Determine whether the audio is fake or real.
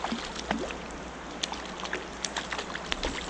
real